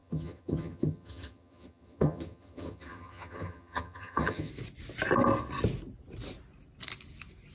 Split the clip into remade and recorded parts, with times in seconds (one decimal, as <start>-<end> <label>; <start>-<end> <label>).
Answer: 0.0-4.5 remade; 4.5-7.5 recorded